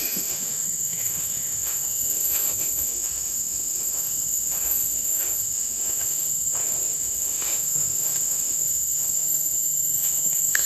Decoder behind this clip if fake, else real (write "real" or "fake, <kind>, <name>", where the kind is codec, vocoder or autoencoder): fake, autoencoder, DAC-VAE